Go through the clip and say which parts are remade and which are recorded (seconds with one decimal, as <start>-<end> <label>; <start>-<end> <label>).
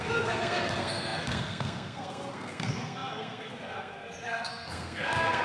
0.0-5.4 remade